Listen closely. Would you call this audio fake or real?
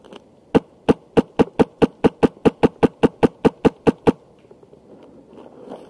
real